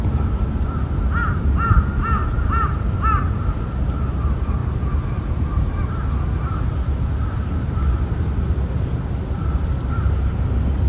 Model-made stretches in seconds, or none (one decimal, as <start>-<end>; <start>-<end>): none